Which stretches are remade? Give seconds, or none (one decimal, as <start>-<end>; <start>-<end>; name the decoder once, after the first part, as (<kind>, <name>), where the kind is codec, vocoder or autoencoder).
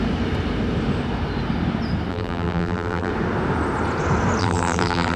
2.1-3.1 (vocoder, BigVGAN v2); 4.4-5.2